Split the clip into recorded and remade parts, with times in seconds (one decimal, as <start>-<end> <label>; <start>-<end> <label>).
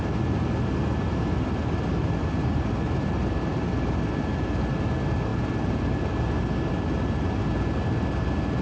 0.0-8.6 recorded